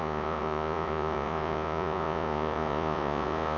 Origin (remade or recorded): remade